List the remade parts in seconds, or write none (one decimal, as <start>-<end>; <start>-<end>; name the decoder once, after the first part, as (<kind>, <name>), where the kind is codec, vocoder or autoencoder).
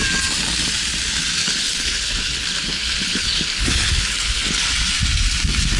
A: 1.4-4.7 (codec, HILCodec)